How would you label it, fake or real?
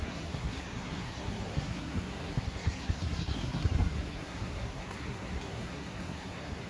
fake